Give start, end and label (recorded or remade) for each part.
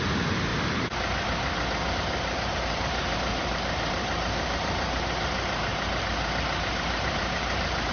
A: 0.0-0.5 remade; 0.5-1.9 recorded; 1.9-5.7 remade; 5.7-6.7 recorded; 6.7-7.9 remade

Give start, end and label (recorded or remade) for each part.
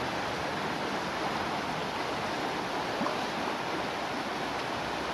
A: 0.0-5.1 recorded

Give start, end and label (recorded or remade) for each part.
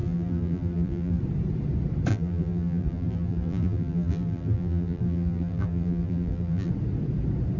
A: 0.0-1.2 remade; 1.2-2.1 recorded; 2.1-6.7 remade; 6.7-7.6 recorded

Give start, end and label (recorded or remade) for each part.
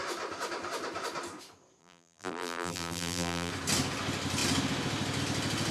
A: 0.0-1.8 recorded; 1.8-3.5 remade; 3.5-5.7 recorded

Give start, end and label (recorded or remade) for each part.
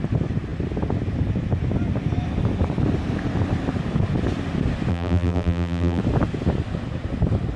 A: 0.0-4.9 recorded; 4.9-6.0 remade; 6.0-7.6 recorded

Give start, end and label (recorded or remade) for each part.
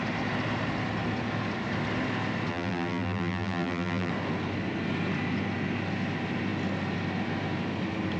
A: 0.0-2.5 recorded; 2.5-4.1 remade; 4.1-8.2 recorded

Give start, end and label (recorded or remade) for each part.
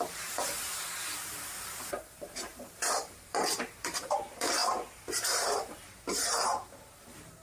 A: 0.0-7.4 remade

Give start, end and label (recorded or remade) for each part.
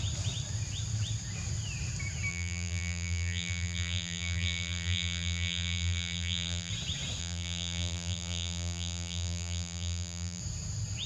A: 0.0-2.3 recorded; 2.3-6.7 remade; 6.7-7.2 recorded; 7.2-10.4 remade; 10.4-11.1 recorded